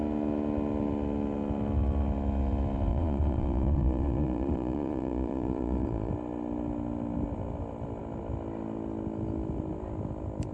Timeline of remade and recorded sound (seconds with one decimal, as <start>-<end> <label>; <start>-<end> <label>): 0.0-2.9 recorded; 2.9-6.1 remade; 6.1-10.5 recorded